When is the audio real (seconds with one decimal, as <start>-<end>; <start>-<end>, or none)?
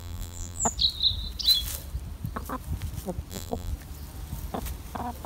0.6-3.3; 3.7-5.3